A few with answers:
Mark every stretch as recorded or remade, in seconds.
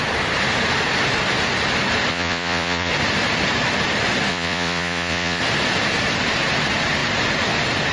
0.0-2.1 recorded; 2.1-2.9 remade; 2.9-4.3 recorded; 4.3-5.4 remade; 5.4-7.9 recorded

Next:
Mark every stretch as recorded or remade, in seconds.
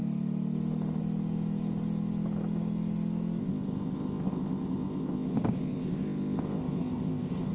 0.0-3.4 recorded; 3.4-7.5 remade